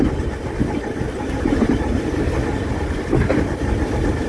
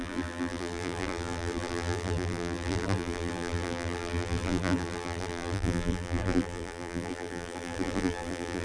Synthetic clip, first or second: second